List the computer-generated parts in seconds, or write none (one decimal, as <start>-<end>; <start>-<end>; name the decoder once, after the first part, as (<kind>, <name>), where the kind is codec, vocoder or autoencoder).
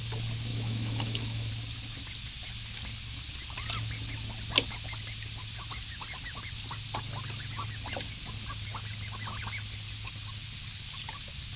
0.5-1.5 (autoencoder, DAC-VAE)